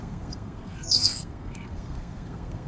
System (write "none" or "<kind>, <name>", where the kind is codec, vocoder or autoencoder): codec, SNAC